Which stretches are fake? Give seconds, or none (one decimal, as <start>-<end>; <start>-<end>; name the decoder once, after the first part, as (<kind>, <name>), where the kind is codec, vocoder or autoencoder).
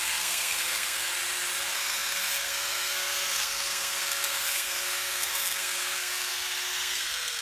0.0-1.1 (codec, SNAC); 1.6-7.4